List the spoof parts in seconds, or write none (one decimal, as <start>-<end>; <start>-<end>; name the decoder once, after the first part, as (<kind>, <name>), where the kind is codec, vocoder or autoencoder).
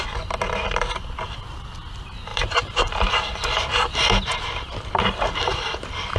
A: 2.3-3.6 (vocoder, BigVGAN v2)